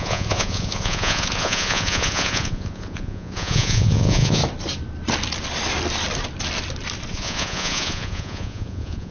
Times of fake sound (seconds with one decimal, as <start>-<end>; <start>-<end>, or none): 0.0-4.4; 7.1-9.1